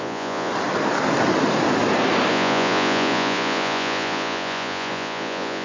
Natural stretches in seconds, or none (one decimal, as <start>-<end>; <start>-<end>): 0.5-2.3